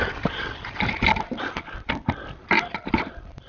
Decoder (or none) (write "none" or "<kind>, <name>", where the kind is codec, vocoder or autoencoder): none